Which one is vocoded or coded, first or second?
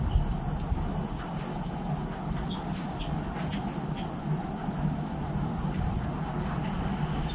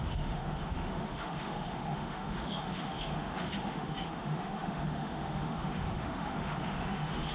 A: second